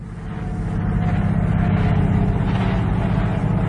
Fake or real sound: real